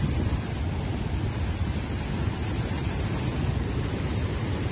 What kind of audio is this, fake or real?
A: real